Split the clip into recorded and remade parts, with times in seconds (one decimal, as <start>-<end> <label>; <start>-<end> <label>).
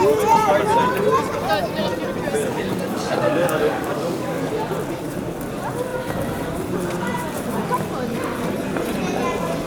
0.0-2.4 recorded; 2.4-4.4 remade; 4.4-9.7 recorded